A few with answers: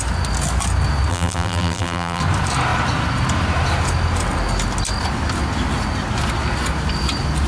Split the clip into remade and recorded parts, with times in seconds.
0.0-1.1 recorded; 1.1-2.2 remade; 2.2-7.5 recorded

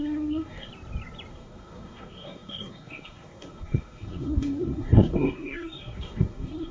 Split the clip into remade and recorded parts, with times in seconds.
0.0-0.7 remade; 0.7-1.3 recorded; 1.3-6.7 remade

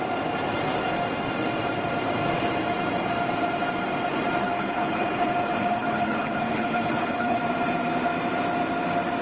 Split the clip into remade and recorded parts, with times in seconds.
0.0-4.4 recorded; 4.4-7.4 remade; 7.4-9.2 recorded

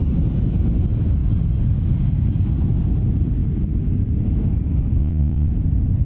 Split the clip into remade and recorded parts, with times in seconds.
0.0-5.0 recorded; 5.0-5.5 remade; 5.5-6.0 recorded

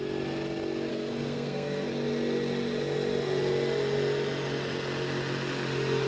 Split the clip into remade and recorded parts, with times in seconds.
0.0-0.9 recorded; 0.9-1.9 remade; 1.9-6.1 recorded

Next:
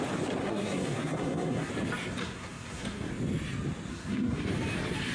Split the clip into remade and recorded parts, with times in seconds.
0.0-0.4 recorded; 0.4-1.7 remade; 1.7-2.2 recorded; 2.2-3.1 remade; 3.1-3.9 recorded; 3.9-4.5 remade; 4.5-5.1 recorded